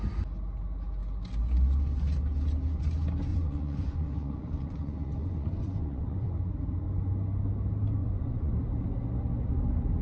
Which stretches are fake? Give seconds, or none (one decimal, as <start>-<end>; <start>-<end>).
3.3-6.4; 8.0-8.5